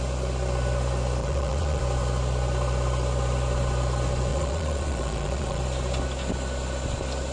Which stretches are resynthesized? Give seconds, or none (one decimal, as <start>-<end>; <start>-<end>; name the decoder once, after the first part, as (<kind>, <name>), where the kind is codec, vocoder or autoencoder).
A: 1.2-1.8 (vocoder, Vocos); 4.3-5.6